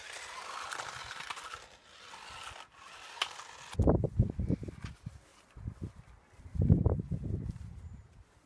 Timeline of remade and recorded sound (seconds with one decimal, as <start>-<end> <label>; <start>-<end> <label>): 0.0-8.5 recorded